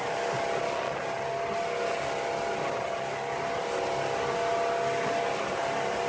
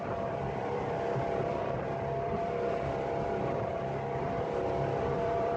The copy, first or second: second